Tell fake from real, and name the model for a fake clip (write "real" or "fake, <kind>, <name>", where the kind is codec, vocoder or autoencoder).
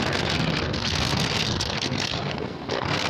fake, codec, SNAC